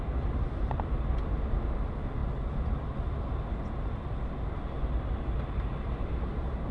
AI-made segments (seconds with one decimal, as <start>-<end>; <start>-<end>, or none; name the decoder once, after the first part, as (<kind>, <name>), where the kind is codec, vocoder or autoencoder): none